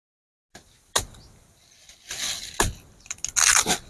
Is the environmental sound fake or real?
real